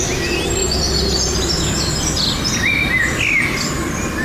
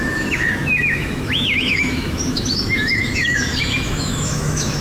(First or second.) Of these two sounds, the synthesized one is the second